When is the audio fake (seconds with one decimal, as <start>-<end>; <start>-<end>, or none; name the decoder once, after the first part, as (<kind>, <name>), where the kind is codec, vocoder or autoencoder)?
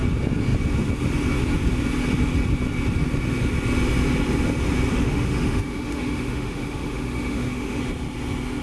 4.9-7.8 (autoencoder, DAC-VAE)